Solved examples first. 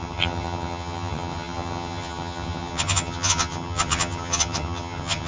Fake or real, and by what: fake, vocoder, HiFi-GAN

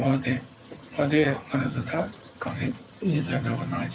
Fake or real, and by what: fake, vocoder, HiFi-GAN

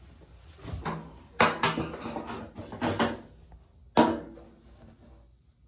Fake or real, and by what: real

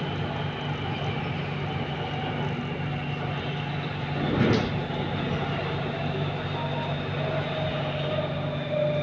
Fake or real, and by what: real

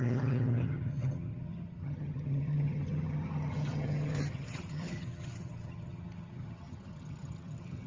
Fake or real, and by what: fake, vocoder, HiFi-GAN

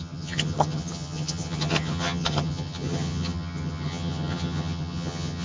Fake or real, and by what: fake, vocoder, HiFi-GAN